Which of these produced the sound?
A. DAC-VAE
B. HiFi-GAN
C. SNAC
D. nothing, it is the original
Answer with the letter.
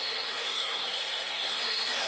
C